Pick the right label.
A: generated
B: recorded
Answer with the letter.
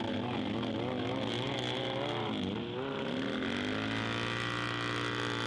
B